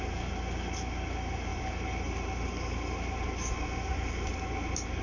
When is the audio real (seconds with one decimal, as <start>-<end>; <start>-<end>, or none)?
0.0-5.0